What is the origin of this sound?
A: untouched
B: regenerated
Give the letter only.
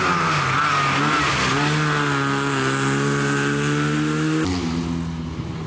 A